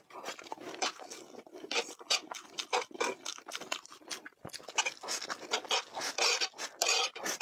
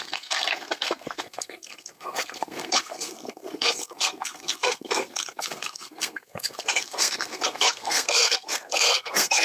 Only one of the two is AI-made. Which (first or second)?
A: second